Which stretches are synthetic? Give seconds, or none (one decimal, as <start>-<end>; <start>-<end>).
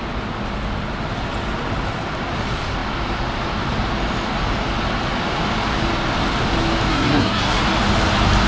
6.9-7.6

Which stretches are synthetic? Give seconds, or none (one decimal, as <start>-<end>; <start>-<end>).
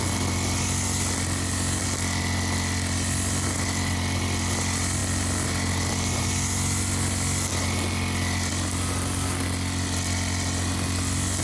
none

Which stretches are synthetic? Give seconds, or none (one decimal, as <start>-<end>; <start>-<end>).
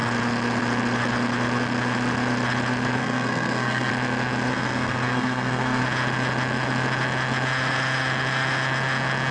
3.0-3.9; 4.5-5.8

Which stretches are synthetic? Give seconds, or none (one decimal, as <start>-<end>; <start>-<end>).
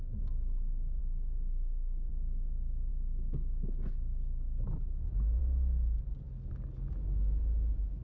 1.0-2.1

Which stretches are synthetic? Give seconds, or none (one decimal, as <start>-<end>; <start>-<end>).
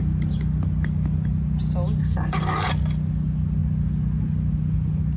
2.0-2.6